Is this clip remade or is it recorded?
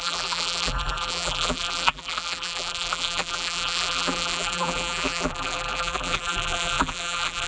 remade